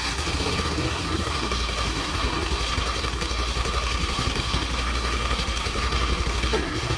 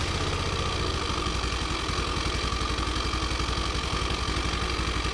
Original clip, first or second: second